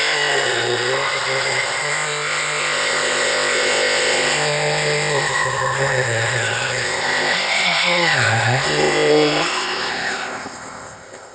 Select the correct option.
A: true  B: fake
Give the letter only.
B